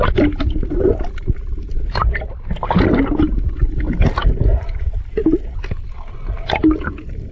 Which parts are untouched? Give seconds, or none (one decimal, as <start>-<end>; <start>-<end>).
0.0-7.3